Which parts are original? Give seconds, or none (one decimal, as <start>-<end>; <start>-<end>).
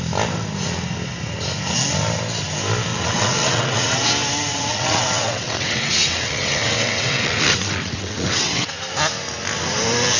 0.0-2.9; 4.1-4.5; 8.7-10.2